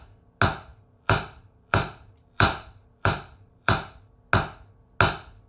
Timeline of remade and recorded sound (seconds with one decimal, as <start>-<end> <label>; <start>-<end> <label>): 0.0-0.7 recorded; 0.7-4.0 remade; 4.0-5.5 recorded